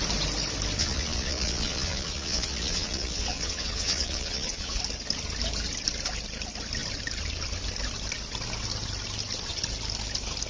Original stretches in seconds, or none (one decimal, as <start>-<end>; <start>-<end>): 0.0-0.8; 4.8-10.5